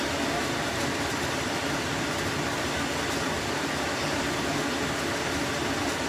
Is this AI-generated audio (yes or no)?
no